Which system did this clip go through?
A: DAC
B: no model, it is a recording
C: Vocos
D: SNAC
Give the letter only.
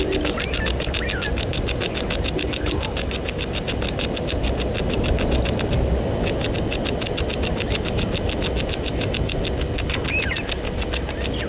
B